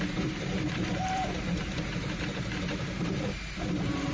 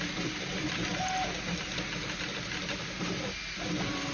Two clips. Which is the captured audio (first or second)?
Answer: second